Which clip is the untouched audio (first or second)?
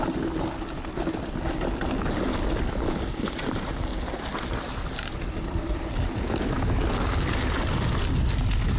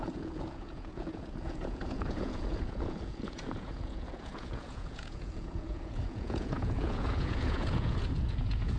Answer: first